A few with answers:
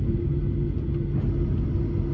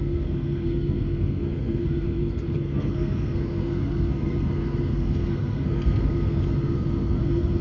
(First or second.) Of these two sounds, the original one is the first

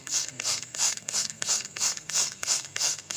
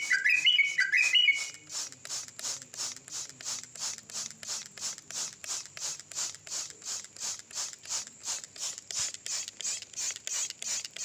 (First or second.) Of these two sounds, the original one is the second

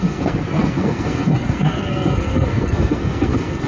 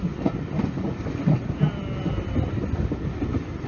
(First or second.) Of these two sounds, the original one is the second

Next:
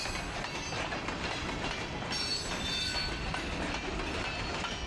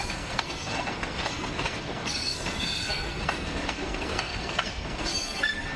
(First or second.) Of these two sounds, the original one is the first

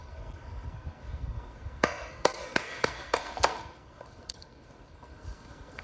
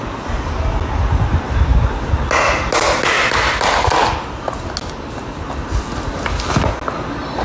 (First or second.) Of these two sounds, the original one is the second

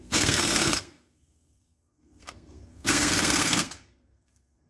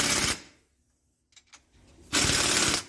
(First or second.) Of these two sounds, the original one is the second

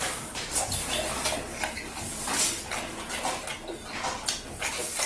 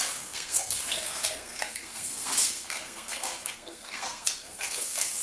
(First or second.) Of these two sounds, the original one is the first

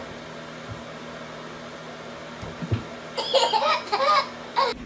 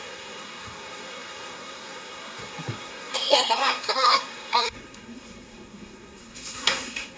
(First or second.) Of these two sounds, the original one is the first